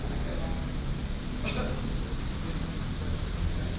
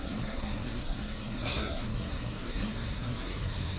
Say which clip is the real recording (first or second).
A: first